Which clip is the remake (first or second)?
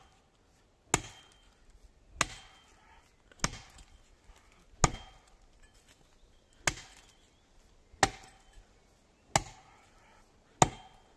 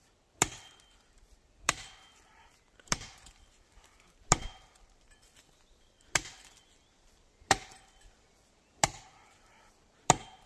second